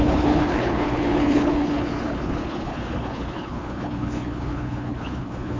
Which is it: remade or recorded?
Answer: remade